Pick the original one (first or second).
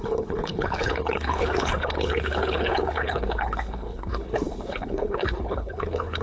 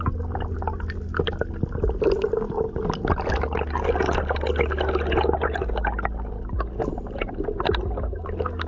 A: second